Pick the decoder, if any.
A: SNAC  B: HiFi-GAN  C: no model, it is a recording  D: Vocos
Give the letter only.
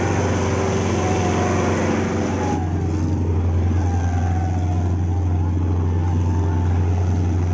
C